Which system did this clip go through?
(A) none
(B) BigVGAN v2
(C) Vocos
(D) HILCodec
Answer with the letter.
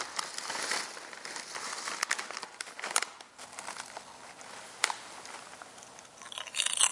A